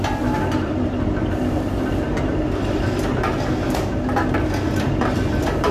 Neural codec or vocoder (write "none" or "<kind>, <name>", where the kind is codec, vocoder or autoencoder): none